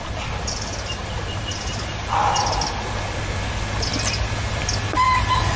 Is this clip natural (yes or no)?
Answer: yes